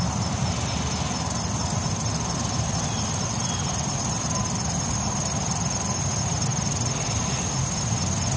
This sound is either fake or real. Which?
real